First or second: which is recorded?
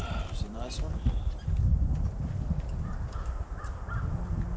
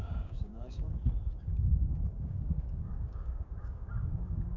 first